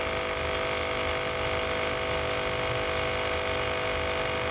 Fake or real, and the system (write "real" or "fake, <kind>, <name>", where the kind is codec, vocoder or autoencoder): real